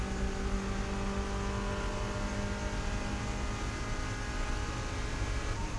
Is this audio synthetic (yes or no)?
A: no